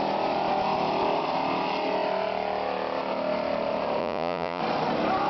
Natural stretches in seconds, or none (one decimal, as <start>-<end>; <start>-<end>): 0.0-4.0; 4.6-5.3

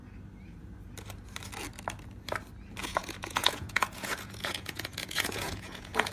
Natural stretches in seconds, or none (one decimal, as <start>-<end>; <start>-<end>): 0.0-2.8

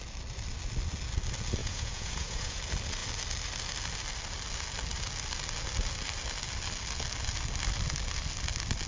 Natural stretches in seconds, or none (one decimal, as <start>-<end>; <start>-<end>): 0.0-1.6; 2.6-8.9

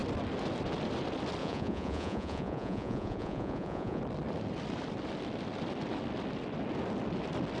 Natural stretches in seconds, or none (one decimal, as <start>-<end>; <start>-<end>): 0.0-1.4; 4.0-7.6

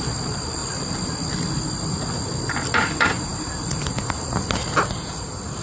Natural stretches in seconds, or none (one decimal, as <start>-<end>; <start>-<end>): 0.0-5.6

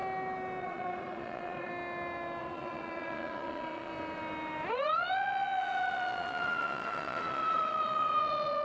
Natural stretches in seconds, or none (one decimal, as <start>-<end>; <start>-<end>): 0.0-0.6; 1.7-2.4; 3.9-4.7

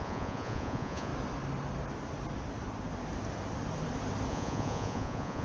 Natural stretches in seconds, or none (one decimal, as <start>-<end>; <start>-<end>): 1.1-4.3

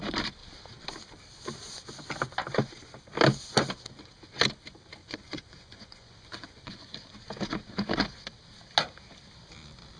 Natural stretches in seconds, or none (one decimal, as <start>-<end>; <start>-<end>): 0.0-5.0; 6.9-10.0